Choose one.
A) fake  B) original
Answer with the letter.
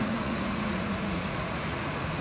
A